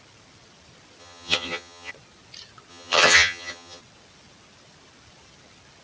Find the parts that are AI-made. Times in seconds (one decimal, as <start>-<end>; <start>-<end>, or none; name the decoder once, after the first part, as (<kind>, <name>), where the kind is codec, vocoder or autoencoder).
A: 1.0-1.9 (vocoder, HiFi-GAN); 2.7-3.8

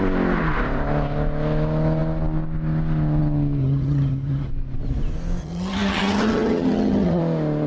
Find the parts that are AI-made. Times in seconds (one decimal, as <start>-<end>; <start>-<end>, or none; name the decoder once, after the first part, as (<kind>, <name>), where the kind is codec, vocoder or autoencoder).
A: 3.6-4.5 (vocoder, HiFi-GAN); 5.4-7.2